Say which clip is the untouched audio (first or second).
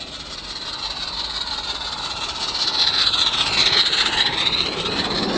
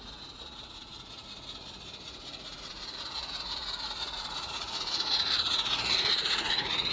first